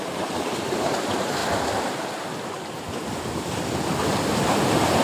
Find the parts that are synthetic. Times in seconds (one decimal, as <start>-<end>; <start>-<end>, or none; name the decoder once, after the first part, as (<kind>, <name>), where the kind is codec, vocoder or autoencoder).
0.0-1.4 (vocoder, BigVGAN v2); 3.1-4.1